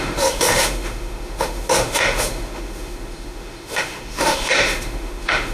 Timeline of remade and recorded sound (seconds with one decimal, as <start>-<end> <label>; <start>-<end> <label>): 0.0-5.5 remade